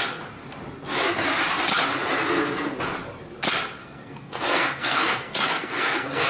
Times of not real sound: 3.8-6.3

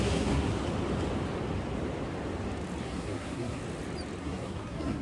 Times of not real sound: 0.0-0.5; 2.8-3.6; 4.2-5.0

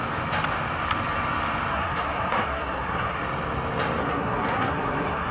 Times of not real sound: 1.7-3.2; 4.0-5.3

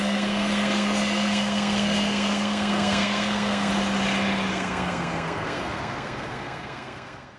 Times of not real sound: 0.0-3.7; 4.5-7.4